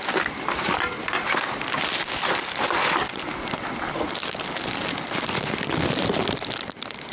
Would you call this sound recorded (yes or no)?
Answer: yes